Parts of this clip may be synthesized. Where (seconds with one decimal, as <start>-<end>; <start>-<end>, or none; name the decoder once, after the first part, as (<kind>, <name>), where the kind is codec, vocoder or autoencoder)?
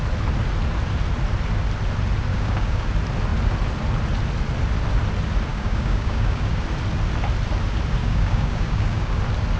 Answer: 2.3-2.9 (codec, DAC); 5.5-6.6; 8.0-9.2